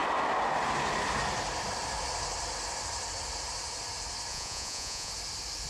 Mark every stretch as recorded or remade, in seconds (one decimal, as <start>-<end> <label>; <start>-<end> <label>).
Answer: 0.0-4.3 recorded; 4.3-5.1 remade; 5.1-5.7 recorded